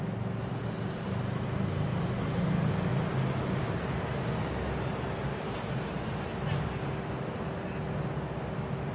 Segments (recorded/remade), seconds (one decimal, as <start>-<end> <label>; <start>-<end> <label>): 0.0-8.9 recorded